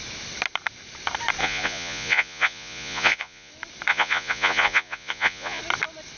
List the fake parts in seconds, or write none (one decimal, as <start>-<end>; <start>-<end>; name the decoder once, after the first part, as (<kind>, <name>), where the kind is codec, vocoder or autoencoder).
1.4-3.5 (vocoder, Vocos); 3.9-5.6